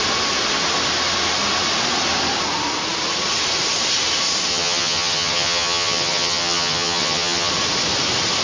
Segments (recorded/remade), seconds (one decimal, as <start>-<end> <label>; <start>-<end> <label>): 0.0-4.5 recorded; 4.5-7.5 remade; 7.5-8.4 recorded